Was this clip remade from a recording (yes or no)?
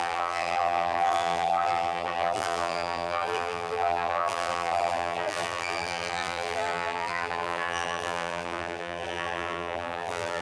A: yes